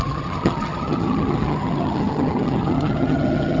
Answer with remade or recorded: remade